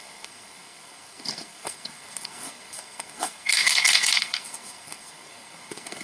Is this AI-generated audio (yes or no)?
yes